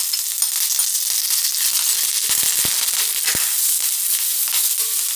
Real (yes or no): yes